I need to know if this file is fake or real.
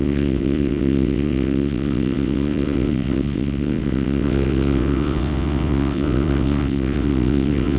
fake